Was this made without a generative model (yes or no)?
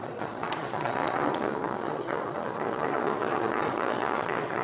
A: no